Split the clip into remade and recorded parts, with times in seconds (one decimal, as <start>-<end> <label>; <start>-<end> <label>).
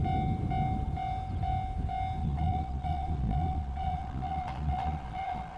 0.0-2.2 recorded; 2.2-5.6 remade